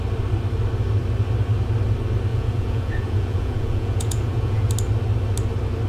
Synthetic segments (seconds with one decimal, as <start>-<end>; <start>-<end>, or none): 2.3-4.7